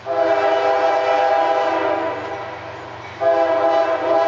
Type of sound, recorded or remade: recorded